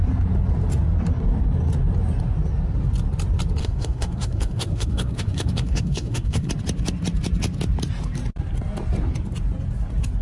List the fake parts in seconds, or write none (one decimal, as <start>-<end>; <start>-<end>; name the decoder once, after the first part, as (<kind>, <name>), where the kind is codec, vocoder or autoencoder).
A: 3.6-6.5 (codec, SNAC)